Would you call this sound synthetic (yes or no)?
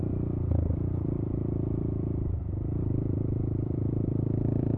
yes